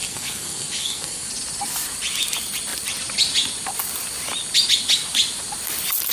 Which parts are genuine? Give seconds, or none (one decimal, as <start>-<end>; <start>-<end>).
1.3-6.1